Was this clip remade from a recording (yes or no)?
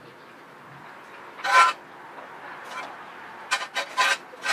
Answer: no